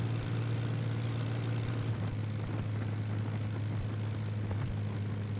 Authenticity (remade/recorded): remade